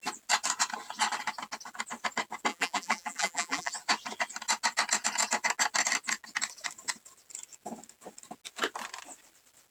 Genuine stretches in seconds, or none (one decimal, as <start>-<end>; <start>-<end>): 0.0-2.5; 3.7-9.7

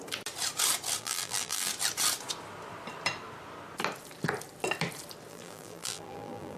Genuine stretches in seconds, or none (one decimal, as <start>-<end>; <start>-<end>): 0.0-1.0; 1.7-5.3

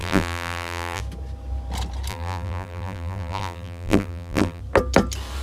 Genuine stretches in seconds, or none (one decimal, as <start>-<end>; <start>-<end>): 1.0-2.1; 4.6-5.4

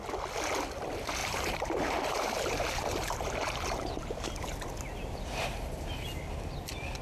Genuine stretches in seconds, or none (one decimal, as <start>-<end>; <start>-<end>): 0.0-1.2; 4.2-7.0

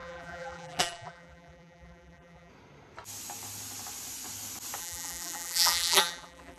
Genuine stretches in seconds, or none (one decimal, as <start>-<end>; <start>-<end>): 2.5-4.8

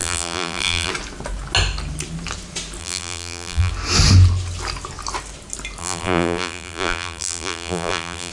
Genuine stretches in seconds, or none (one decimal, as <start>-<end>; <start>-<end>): 0.9-2.8; 3.7-5.8